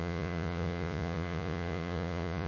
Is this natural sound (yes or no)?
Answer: no